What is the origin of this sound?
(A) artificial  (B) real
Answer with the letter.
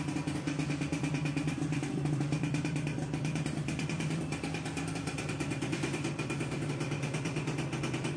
A